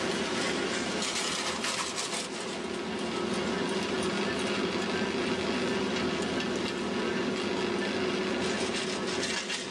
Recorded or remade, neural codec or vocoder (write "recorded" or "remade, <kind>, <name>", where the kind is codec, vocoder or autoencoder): recorded